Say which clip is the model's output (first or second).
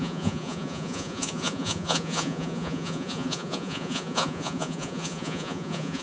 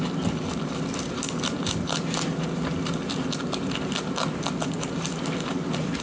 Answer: first